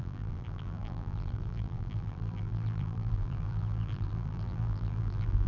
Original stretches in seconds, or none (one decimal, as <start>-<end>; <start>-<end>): none